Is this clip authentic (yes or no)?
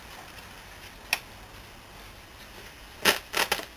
yes